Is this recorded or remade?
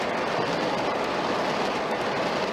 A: recorded